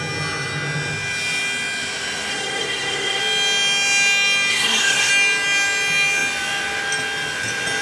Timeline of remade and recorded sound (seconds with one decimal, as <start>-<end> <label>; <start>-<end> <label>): 0.0-2.3 recorded; 2.3-3.2 remade; 3.2-4.5 recorded; 4.5-5.1 remade; 5.1-7.8 recorded

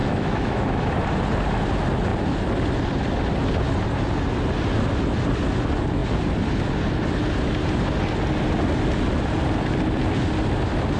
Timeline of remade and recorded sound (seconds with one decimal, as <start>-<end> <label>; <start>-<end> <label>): 0.0-0.9 remade; 0.9-11.0 recorded

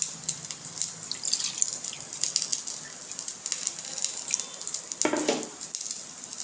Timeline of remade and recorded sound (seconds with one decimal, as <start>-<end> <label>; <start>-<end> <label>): 0.0-6.4 recorded

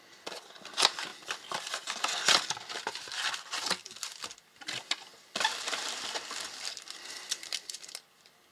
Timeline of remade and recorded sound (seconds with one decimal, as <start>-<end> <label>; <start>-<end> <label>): 0.0-5.1 recorded; 5.1-8.5 remade